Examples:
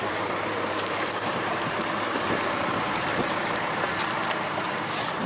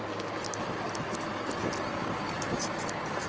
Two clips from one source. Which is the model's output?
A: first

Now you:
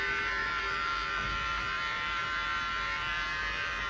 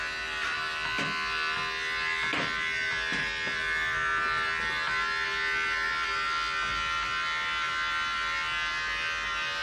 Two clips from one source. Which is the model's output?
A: first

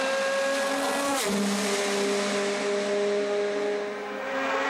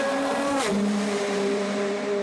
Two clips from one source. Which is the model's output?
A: second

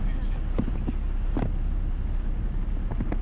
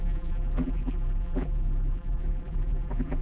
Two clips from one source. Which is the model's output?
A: second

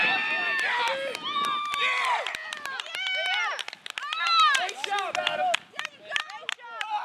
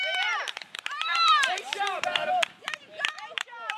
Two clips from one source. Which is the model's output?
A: second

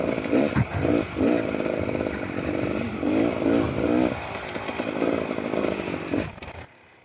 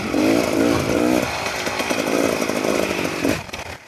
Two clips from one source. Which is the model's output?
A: first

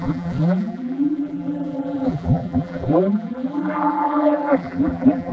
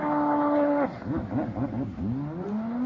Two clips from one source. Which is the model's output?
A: first